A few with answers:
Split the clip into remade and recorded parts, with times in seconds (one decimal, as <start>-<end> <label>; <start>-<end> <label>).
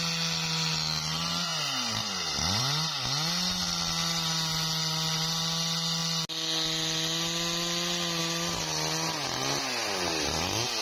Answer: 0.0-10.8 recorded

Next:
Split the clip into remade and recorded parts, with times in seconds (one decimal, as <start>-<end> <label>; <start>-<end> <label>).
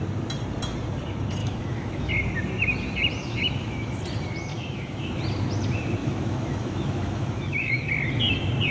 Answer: 0.0-1.4 recorded; 1.4-2.1 remade; 2.1-3.2 recorded; 3.2-4.0 remade; 4.0-4.5 recorded; 4.5-5.1 remade; 5.1-6.0 recorded; 6.0-7.9 remade; 7.9-8.7 recorded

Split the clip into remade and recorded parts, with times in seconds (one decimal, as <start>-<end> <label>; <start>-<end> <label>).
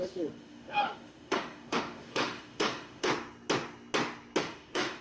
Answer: 0.0-3.1 remade; 3.1-4.4 recorded; 4.4-5.0 remade